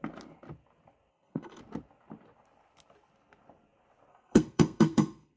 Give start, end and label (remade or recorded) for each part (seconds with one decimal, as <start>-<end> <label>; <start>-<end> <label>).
0.0-1.1 recorded; 1.1-1.6 remade; 1.6-4.1 recorded; 4.1-5.4 remade